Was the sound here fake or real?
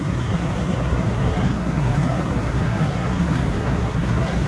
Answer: fake